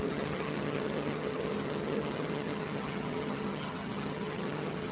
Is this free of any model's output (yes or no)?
no